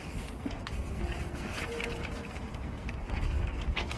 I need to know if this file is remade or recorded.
remade